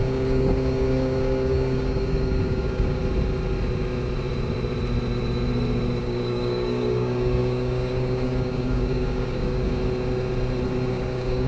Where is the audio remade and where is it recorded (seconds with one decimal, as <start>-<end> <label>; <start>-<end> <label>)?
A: 0.0-3.0 remade; 3.0-6.0 recorded; 6.0-9.8 remade; 9.8-10.9 recorded; 10.9-11.5 remade